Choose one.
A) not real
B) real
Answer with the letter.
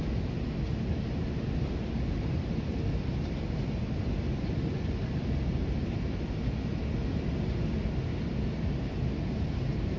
B